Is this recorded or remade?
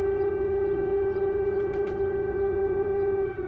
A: remade